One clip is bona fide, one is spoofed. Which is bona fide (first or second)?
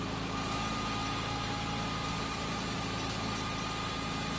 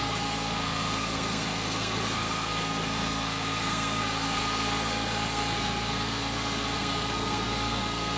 first